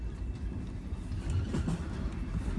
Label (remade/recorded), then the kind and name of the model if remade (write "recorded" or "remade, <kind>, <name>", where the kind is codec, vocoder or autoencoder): recorded